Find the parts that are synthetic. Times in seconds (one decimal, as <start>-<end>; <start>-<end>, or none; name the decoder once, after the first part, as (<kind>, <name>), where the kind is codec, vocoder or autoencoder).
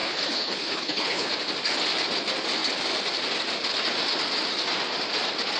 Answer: 0.0-1.3 (codec, HILCodec)